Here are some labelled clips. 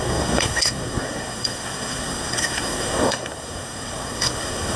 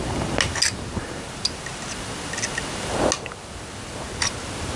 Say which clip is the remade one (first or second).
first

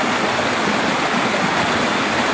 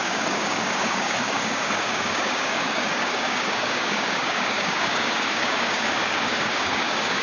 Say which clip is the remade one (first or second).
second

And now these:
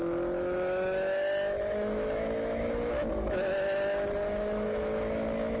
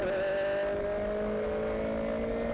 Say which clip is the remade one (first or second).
first